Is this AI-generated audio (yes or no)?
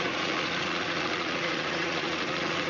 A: yes